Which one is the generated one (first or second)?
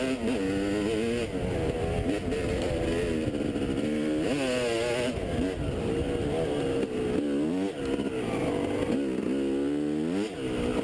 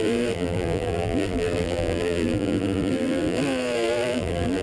second